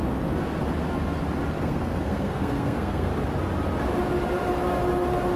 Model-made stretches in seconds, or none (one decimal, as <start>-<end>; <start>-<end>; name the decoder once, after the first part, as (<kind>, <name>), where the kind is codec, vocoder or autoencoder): 1.6-3.1 (codec, SNAC)